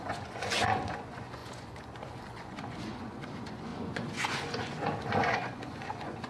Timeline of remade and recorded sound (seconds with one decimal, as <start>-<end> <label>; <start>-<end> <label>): 0.0-6.3 remade